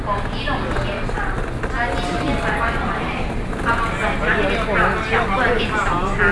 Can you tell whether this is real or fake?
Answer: real